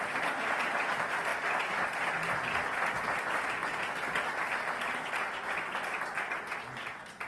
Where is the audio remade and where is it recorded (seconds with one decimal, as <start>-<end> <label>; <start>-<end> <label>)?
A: 0.0-7.3 recorded